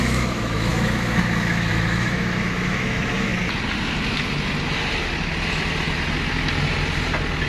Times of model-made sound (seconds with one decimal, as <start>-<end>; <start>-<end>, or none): 0.0-3.3